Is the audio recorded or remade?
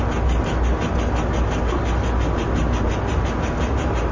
recorded